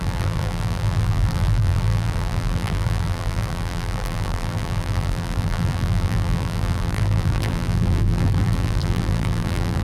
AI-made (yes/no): yes